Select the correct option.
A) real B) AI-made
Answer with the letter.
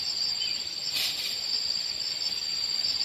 A